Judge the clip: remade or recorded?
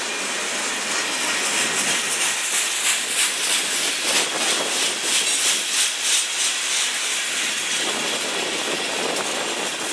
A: recorded